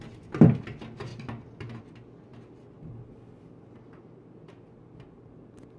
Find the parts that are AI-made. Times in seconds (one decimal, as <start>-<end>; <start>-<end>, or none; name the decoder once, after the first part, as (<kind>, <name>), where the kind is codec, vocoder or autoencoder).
none